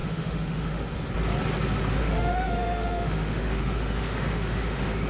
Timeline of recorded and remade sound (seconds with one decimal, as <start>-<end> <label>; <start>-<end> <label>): 0.0-0.8 remade; 0.8-2.0 recorded; 2.0-5.1 remade